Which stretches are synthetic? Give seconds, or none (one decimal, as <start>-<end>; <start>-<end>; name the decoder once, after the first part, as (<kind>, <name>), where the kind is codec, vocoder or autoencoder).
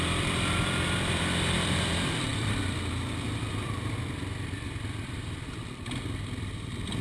0.0-7.0 (vocoder, BigVGAN v2)